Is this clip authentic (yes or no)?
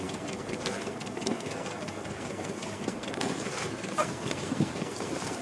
no